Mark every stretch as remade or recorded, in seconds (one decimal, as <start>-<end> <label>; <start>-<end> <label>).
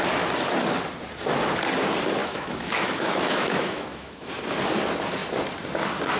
0.0-2.2 recorded; 2.2-4.3 remade; 4.3-6.2 recorded